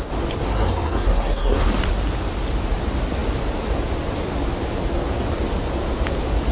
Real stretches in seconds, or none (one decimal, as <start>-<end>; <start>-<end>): 0.0-0.5; 1.6-6.5

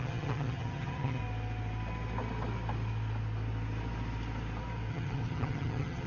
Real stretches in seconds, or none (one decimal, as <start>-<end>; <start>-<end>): 1.2-4.9

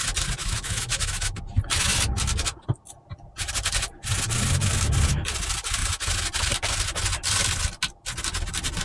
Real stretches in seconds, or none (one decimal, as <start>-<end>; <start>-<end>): 0.0-0.4; 1.4-8.8

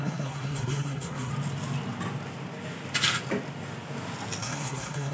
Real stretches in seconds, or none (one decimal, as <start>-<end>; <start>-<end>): 1.3-4.4

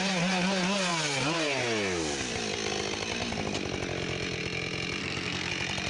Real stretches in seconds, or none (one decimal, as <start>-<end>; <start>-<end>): 0.0-5.0; 5.5-5.9

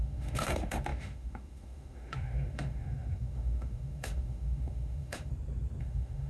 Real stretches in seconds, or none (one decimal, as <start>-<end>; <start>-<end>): 5.3-5.8

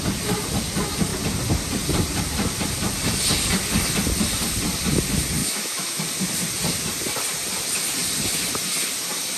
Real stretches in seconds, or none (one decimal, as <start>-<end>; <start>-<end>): 0.0-5.4; 6.0-9.4

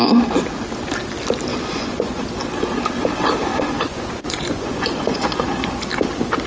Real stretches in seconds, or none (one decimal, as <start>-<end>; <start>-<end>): 0.0-1.5; 2.2-3.5; 5.8-6.5